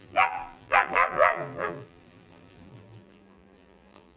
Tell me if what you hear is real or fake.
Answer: fake